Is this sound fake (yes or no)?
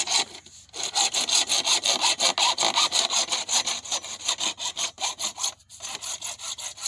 no